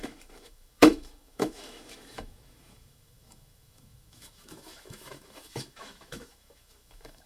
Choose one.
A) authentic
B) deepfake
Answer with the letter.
B